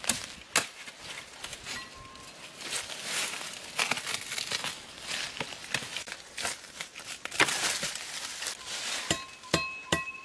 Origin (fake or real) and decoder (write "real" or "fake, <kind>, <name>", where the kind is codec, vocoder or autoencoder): real